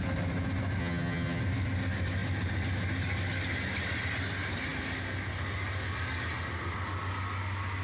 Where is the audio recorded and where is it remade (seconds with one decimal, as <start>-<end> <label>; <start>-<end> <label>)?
0.0-0.8 recorded; 0.8-1.4 remade; 1.4-7.8 recorded